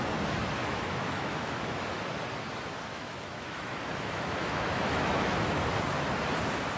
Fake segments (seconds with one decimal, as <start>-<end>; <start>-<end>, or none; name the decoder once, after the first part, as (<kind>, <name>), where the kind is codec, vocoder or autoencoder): 0.6-1.8 (autoencoder, DAC-VAE); 2.9-5.6